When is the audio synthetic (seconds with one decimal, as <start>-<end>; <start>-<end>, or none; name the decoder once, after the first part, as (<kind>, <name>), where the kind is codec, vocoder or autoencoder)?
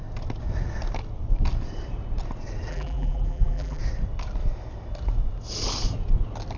2.7-3.8 (vocoder, BigVGAN v2)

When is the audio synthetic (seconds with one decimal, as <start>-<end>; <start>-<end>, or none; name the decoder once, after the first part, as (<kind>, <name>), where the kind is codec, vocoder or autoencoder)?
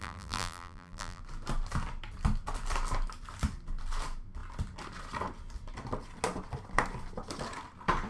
0.0-1.2 (vocoder, BigVGAN v2)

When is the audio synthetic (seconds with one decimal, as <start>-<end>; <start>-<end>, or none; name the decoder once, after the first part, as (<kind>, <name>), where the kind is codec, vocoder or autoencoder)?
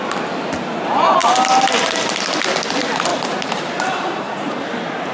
3.1-4.5 (vocoder, BigVGAN v2)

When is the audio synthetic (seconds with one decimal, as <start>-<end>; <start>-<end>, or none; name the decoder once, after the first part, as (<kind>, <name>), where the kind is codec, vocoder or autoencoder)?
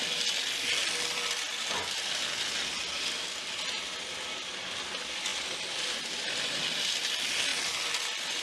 5.3-6.5 (vocoder, BigVGAN v2); 7.5-8.4